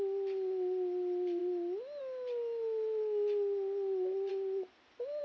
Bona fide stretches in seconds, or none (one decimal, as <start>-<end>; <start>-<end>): 0.0-5.2